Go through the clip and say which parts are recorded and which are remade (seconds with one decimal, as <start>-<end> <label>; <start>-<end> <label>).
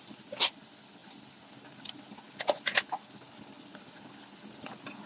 0.0-5.1 recorded